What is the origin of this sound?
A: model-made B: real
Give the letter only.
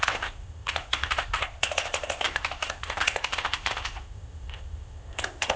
A